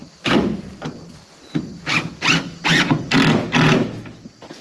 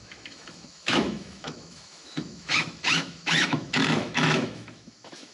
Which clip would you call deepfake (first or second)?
second